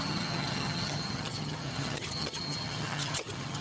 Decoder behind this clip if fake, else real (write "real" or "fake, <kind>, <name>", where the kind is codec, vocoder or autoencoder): fake, vocoder, HiFi-GAN